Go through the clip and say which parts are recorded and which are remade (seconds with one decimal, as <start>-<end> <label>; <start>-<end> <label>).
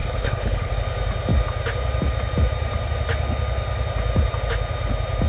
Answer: 0.0-0.7 remade; 0.7-5.3 recorded